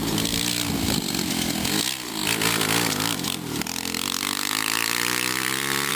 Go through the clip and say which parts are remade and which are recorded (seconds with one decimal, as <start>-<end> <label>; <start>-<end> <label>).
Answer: 0.0-1.3 remade; 1.3-5.9 recorded